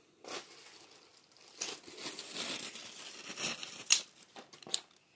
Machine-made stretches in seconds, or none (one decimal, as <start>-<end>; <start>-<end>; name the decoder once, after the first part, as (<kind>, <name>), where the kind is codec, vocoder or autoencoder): 1.1-4.2 (vocoder, BigVGAN v2)

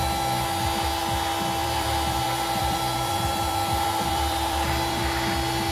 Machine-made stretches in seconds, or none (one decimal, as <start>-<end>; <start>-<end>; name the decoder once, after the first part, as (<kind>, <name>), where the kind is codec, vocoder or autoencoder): 1.6-5.0 (vocoder, BigVGAN v2)

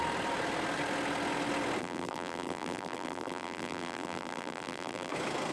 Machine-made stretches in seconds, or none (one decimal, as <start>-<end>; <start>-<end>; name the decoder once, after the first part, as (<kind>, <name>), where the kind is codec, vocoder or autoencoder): 1.8-5.1 (vocoder, BigVGAN v2)

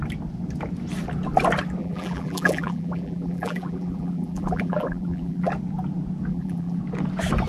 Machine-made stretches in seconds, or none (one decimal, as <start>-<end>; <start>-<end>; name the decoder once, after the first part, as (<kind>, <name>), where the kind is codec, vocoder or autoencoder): 1.8-5.5 (vocoder, BigVGAN v2); 6.3-6.8